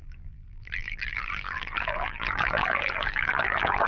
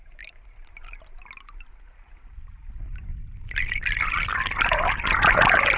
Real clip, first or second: second